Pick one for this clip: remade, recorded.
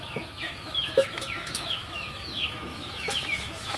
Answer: remade